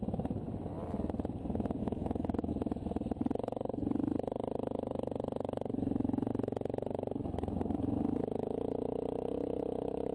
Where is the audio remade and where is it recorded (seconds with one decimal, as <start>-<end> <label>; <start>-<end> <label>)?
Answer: 0.0-1.8 recorded; 1.8-2.5 remade; 2.5-10.1 recorded